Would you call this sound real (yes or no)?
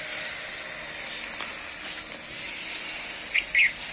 yes